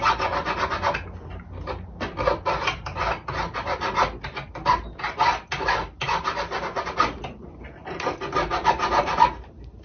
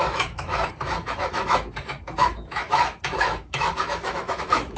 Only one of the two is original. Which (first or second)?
first